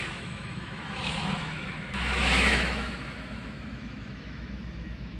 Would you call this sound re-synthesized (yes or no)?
yes